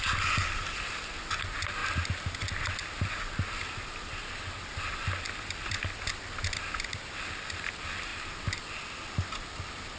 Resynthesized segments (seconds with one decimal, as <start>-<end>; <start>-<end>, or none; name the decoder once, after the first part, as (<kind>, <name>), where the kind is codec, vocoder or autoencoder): 8.1-8.6 (vocoder, BigVGAN v2)